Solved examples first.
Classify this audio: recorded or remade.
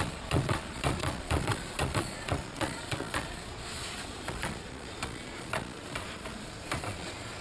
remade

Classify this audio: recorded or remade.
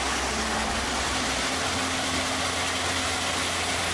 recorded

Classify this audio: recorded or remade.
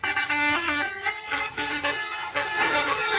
remade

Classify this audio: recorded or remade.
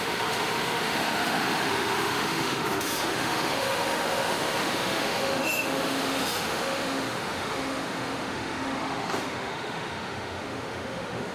remade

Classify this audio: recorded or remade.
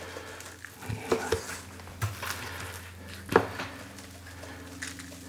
recorded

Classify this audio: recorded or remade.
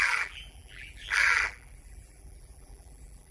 remade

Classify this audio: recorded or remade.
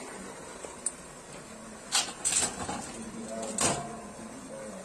recorded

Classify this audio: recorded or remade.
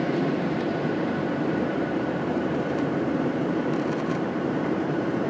remade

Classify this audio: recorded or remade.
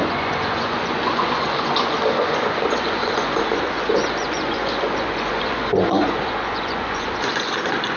remade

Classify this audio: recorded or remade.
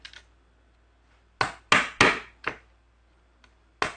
recorded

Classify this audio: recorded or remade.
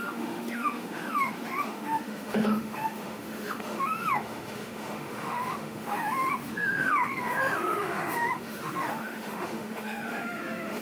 remade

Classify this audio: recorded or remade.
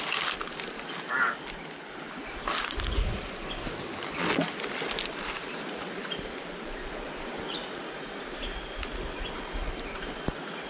recorded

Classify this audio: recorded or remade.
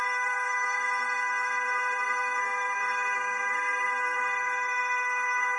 remade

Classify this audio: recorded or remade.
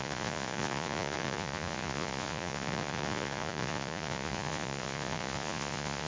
remade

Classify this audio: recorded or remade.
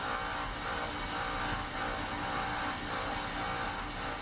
recorded